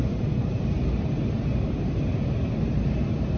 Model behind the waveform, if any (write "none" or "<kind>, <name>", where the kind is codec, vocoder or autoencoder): vocoder, BigVGAN v2